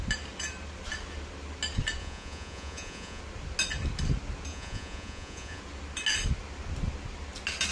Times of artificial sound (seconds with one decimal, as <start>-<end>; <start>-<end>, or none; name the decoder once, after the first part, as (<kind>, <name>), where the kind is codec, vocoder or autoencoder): 2.0-3.2 (vocoder, Vocos); 4.5-5.6